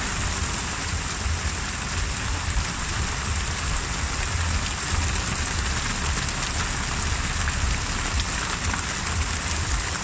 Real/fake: real